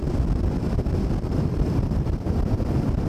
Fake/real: real